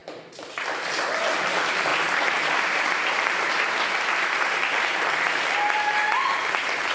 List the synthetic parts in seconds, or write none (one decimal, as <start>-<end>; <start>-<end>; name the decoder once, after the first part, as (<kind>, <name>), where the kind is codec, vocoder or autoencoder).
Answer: 1.9-3.7 (vocoder, BigVGAN v2)